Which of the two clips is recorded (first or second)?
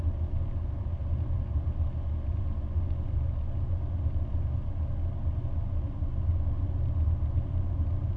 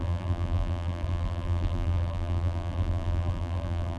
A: first